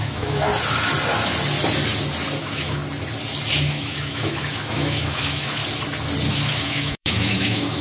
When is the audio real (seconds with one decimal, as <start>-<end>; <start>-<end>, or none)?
0.5-2.4; 2.8-3.7; 5.6-6.3